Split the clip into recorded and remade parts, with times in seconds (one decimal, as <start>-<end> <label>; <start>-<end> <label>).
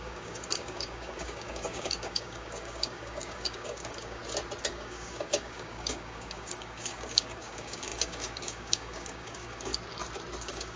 0.0-4.2 remade; 4.2-4.7 recorded; 4.7-9.7 remade; 9.7-10.4 recorded; 10.4-10.8 remade